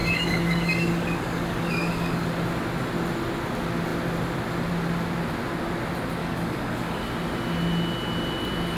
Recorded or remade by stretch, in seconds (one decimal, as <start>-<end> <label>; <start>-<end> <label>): 0.0-2.3 remade; 2.3-6.2 recorded; 6.2-7.0 remade; 7.0-8.8 recorded